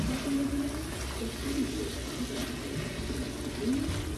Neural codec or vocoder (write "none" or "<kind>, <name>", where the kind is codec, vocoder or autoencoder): none